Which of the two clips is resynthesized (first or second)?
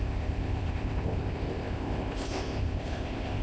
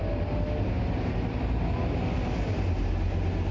first